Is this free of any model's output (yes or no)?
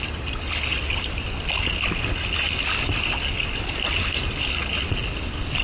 yes